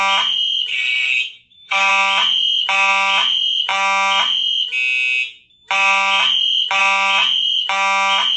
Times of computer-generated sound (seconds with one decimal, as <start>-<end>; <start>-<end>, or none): 0.7-1.9